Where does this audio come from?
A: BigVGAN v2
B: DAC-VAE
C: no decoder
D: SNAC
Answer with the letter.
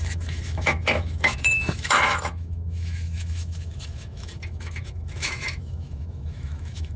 B